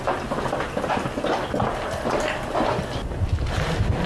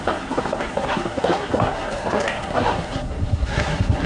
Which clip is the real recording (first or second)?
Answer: first